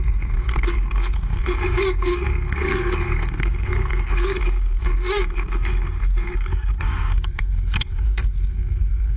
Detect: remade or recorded remade